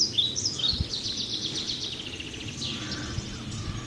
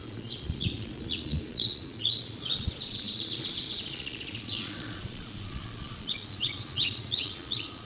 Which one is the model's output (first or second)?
second